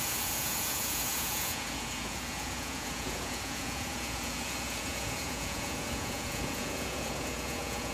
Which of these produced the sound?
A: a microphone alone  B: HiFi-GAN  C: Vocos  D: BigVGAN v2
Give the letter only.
C